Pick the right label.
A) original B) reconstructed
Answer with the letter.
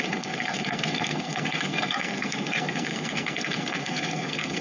B